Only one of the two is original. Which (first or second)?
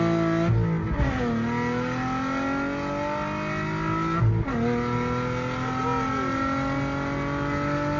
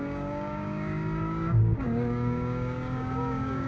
first